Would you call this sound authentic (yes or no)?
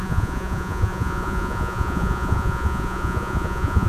no